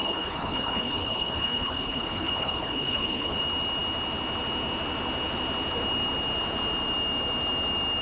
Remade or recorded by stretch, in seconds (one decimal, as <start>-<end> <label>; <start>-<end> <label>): 0.0-3.4 remade; 3.4-8.0 recorded